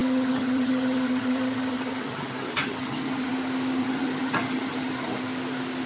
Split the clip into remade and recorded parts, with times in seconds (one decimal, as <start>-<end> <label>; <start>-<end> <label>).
0.0-3.3 remade; 3.3-3.8 recorded; 3.8-5.2 remade; 5.2-5.9 recorded